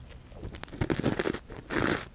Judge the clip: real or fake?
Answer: real